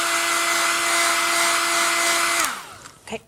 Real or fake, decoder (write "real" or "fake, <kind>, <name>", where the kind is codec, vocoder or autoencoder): real